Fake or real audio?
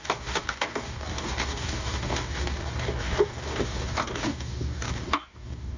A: fake